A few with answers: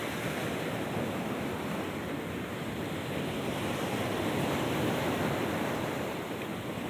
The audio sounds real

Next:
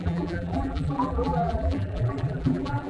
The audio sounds fake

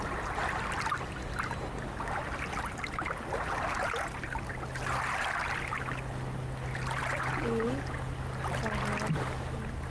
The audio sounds real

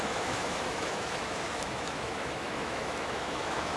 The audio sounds fake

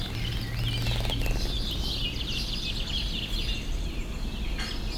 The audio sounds real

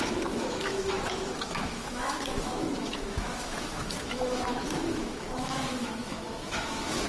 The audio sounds fake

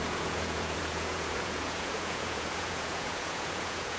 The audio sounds fake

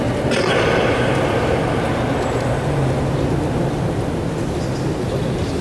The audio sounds real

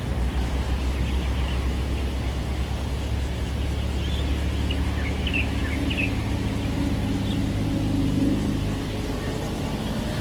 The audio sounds real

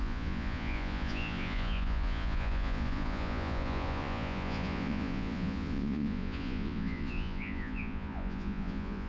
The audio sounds fake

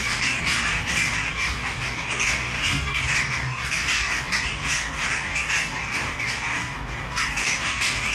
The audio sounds fake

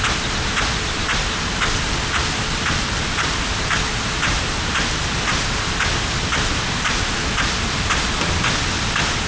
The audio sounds real